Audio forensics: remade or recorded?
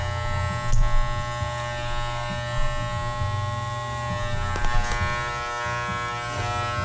recorded